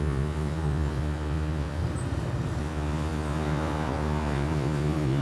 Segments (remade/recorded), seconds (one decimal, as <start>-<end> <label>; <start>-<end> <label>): 0.0-1.8 remade; 1.8-2.6 recorded; 2.6-5.2 remade